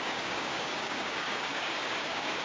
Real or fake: fake